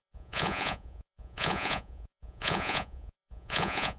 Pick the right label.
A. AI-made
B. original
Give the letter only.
A